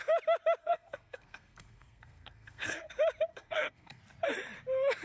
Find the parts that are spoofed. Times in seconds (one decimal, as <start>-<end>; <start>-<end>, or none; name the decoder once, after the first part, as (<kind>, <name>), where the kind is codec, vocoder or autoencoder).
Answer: 0.6-2.9 (codec, SNAC); 3.3-4.0